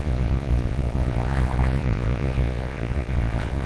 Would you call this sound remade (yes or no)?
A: yes